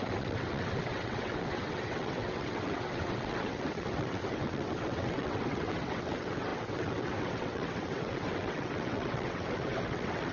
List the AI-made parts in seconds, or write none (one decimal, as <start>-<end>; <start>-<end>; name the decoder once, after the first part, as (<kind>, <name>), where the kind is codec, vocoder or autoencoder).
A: 0.0-10.3 (vocoder, WaveNeXt)